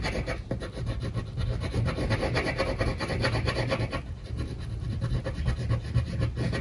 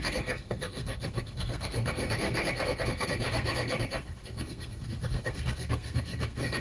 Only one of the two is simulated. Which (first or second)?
second